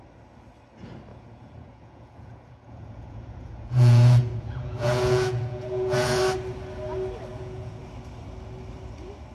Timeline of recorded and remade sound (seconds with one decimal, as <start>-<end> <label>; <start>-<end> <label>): 0.0-1.1 recorded; 1.1-6.2 remade; 6.2-7.3 recorded; 7.3-7.8 remade; 7.8-9.3 recorded